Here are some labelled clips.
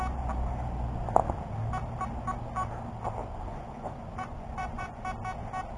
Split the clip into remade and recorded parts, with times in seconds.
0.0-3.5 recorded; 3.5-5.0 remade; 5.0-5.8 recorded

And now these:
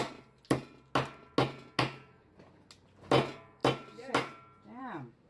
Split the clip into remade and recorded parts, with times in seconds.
0.0-5.3 recorded